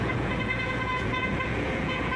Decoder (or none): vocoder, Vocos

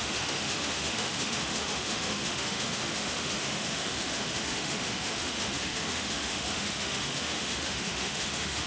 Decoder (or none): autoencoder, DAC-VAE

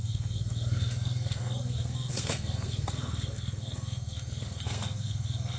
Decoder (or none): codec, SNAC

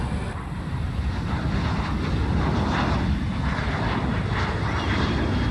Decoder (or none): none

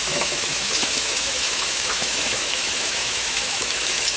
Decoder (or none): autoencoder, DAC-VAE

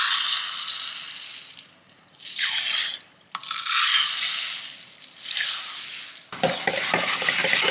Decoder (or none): none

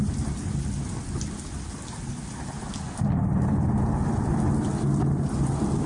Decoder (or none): none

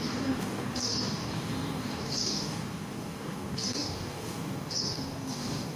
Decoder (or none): codec, DAC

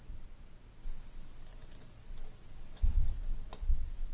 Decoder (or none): none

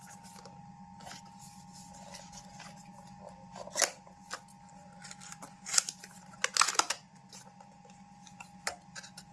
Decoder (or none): none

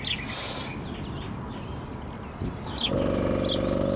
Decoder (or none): none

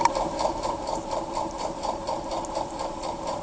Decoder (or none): vocoder, BigVGAN v2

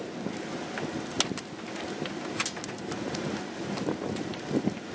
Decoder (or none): none